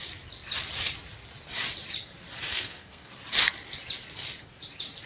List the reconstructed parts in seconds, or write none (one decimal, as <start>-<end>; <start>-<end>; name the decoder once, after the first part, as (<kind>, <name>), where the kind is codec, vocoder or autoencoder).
2.5-3.1 (codec, SNAC)